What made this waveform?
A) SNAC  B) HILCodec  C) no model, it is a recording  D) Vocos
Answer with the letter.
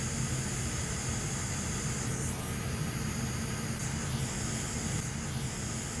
C